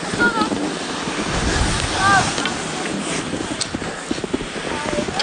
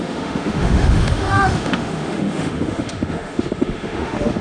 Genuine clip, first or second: first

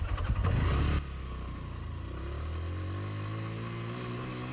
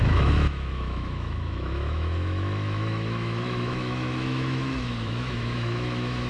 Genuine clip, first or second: first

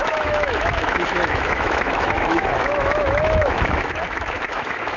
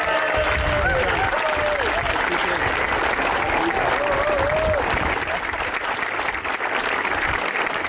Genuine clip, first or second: second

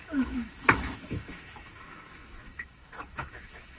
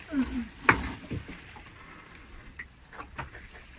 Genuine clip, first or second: second